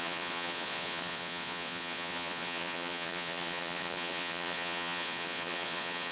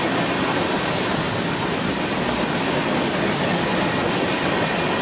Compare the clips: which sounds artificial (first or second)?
first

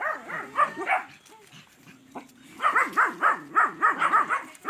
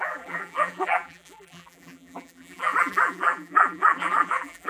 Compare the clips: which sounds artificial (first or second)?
second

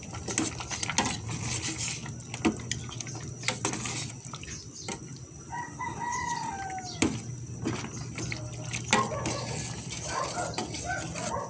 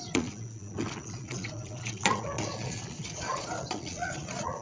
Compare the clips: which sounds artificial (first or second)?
second